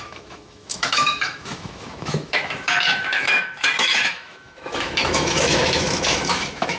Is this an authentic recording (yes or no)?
no